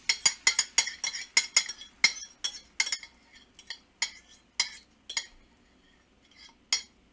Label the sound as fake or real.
real